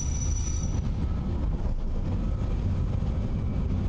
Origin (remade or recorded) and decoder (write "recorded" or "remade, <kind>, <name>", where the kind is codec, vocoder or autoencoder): recorded